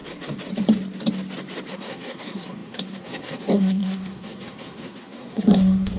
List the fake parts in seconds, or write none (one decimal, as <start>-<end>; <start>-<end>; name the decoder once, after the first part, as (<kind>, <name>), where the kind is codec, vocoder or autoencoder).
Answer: 1.7-6.0 (codec, SNAC)